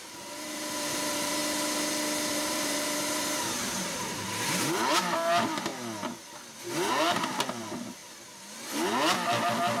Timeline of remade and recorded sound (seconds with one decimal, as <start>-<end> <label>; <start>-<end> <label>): 0.0-1.4 remade; 1.4-2.3 recorded; 2.3-5.7 remade; 5.7-6.9 recorded; 6.9-8.0 remade; 8.0-9.8 recorded